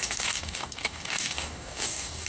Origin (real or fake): fake